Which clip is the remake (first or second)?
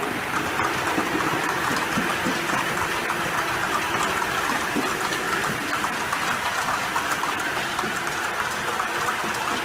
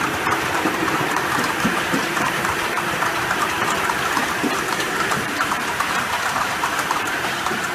second